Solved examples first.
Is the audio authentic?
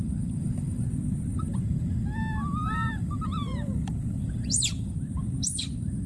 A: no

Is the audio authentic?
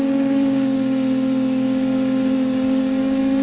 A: no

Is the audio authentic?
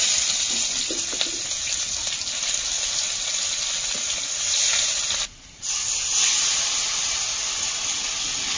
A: yes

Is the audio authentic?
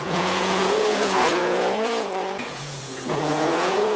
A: no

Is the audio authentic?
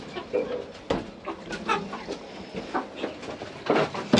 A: yes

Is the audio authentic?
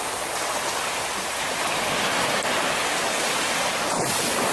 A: yes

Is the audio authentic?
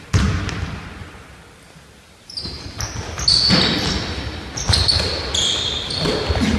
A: yes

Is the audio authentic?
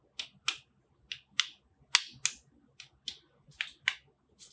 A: yes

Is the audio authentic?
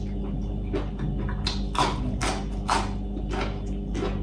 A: yes